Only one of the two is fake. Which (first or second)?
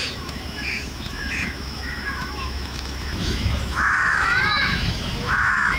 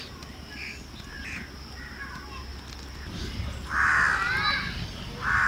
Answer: first